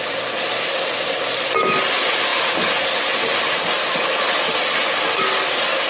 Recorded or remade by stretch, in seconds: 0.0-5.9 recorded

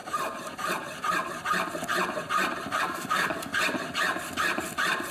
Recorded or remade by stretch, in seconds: 0.0-2.8 recorded; 2.8-3.5 remade; 3.5-5.1 recorded

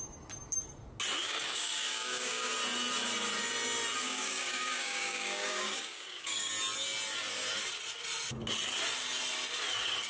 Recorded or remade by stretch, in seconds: 0.0-1.2 recorded; 1.2-2.5 remade; 2.5-4.0 recorded; 4.0-6.5 remade; 6.5-10.1 recorded

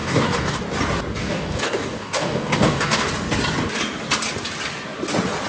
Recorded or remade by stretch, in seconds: 0.0-0.6 remade; 0.6-1.2 recorded; 1.2-3.1 remade; 3.1-5.5 recorded

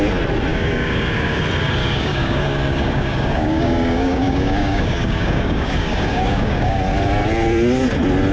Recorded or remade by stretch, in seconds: 0.0-0.5 recorded; 0.5-1.4 remade; 1.4-1.8 recorded; 1.8-6.8 remade; 6.8-8.3 recorded